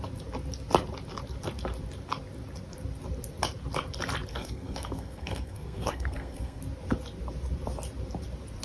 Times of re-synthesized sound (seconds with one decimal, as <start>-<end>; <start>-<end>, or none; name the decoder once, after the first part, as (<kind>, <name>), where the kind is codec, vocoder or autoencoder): 4.3-6.6 (codec, SNAC)